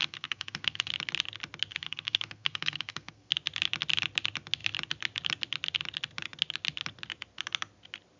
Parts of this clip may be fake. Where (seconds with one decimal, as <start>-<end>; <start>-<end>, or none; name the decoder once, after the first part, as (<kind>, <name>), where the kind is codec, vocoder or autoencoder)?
0.0-0.9 (codec, SNAC); 1.7-3.3